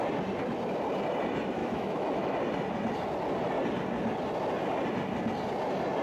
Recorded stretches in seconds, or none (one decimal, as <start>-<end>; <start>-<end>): 0.0-1.6; 2.4-6.0